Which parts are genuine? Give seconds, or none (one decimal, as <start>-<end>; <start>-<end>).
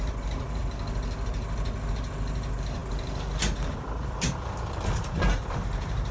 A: 0.6-1.9